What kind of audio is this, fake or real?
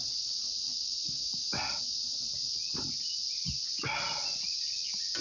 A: real